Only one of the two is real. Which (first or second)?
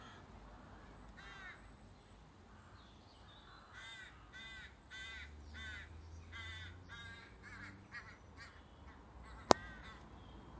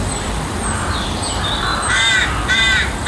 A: first